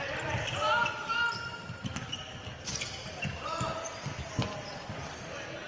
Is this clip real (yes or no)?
no